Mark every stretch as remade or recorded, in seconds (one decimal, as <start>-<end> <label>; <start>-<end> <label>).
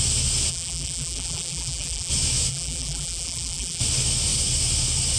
0.0-0.5 recorded; 0.5-2.1 remade; 2.1-2.5 recorded; 2.5-3.8 remade; 3.8-5.2 recorded